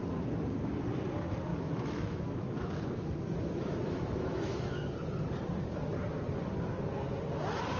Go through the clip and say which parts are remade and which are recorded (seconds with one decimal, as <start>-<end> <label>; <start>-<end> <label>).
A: 0.0-1.5 recorded; 1.5-4.8 remade; 4.8-7.8 recorded